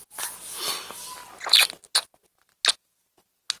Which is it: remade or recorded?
recorded